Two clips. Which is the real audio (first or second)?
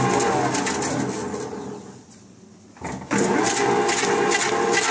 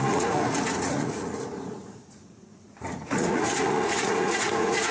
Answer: first